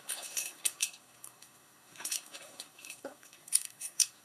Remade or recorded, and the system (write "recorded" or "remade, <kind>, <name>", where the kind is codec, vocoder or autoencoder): remade, codec, SNAC